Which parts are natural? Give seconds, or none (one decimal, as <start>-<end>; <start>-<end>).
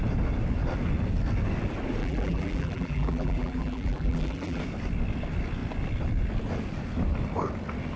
0.0-2.0; 4.6-8.0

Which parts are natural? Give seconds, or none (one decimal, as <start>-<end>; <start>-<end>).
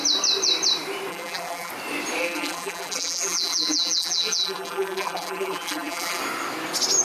0.0-1.1; 1.7-2.2; 6.2-7.0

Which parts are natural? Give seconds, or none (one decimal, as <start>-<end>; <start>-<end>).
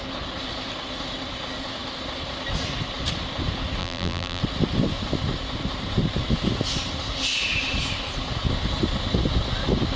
0.0-3.8; 4.4-10.0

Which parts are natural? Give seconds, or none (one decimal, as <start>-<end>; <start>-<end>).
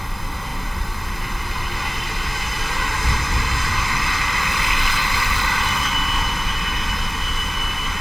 0.0-2.9; 3.4-5.0; 5.8-8.0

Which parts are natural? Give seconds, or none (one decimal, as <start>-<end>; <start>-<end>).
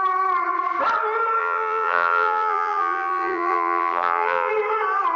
0.0-1.4; 4.5-5.2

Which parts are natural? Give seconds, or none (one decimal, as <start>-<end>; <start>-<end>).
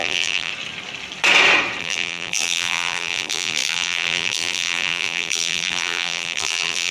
0.5-1.8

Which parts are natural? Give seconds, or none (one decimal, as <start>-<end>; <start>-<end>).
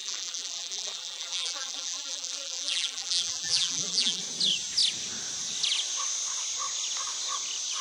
4.2-7.8